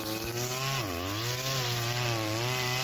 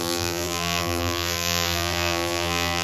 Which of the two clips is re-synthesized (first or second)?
second